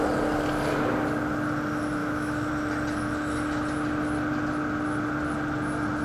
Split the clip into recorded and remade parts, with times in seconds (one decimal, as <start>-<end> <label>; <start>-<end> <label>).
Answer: 0.0-2.0 recorded; 2.0-2.5 remade; 2.5-6.0 recorded